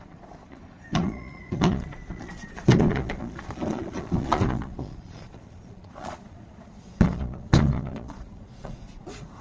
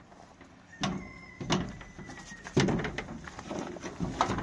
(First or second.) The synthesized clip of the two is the first